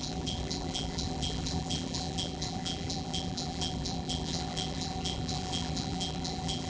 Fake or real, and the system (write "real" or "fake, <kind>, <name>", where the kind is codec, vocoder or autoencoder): fake, vocoder, BigVGAN v2